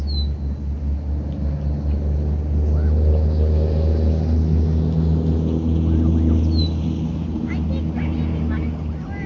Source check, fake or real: real